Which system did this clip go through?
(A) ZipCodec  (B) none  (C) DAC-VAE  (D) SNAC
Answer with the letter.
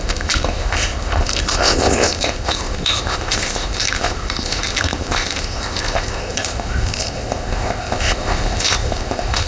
A